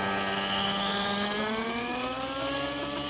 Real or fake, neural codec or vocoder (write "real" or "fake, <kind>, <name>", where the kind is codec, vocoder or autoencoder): real